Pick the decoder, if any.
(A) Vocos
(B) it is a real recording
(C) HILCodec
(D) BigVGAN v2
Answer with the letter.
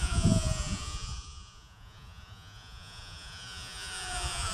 A